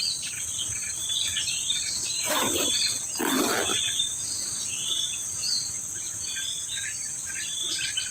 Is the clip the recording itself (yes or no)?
no